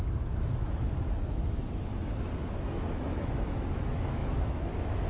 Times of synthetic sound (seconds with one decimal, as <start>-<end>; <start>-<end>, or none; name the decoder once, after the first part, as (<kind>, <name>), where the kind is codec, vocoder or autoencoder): 0.0-1.9 (autoencoder, DAC-VAE); 3.0-5.1

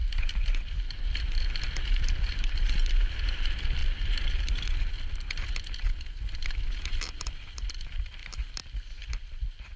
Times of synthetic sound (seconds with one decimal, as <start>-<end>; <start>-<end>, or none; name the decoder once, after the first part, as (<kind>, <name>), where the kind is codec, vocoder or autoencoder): 0.0-3.8 (vocoder, BigVGAN v2); 7.0-8.2; 9.2-9.8